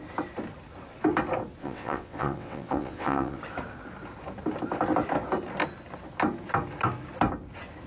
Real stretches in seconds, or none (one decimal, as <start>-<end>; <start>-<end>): 0.0-1.6; 3.4-7.9